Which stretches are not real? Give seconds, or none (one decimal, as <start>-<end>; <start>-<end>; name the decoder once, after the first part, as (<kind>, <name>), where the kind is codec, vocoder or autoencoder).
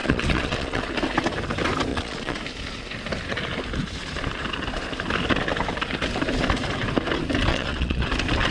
0.0-0.8 (vocoder, Vocos); 1.9-2.4; 7.5-8.1